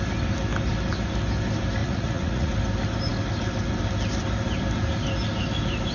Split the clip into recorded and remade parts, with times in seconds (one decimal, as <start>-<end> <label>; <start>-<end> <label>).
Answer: 0.0-1.8 recorded; 1.8-2.5 remade; 2.5-5.9 recorded